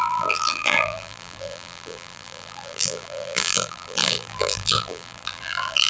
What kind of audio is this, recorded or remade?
remade